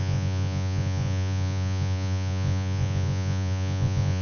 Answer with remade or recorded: remade